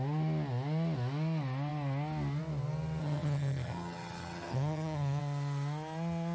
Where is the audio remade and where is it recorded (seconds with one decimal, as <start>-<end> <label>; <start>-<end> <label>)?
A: 0.0-3.0 recorded; 3.0-5.2 remade; 5.2-6.3 recorded